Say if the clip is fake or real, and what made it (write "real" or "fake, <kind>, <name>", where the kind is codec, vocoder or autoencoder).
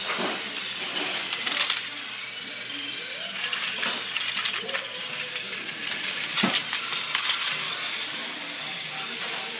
real